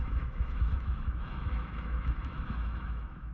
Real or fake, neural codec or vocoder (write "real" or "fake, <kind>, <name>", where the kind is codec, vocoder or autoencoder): fake, autoencoder, DAC-VAE